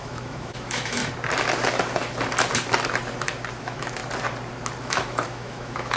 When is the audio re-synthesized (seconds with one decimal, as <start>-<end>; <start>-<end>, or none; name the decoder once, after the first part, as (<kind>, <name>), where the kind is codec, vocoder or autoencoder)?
0.0-1.0 (autoencoder, DAC-VAE); 3.6-4.0; 4.8-6.0